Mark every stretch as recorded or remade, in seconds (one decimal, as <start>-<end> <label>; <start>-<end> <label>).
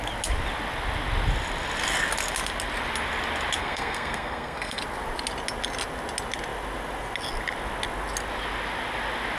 0.0-3.6 recorded; 3.6-4.8 remade; 4.8-9.4 recorded